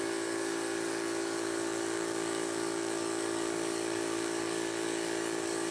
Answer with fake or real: fake